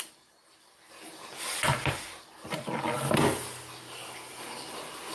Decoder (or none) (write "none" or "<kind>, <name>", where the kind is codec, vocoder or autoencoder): none